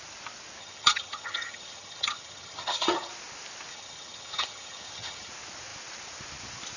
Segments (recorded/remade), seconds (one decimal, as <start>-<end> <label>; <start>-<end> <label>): 0.0-0.6 recorded; 0.6-3.1 remade; 3.1-3.7 recorded; 3.7-5.3 remade; 5.3-6.8 recorded